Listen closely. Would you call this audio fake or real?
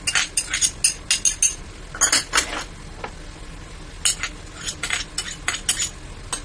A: real